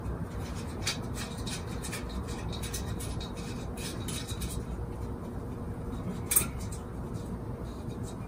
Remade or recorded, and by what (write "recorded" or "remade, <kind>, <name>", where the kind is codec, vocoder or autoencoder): recorded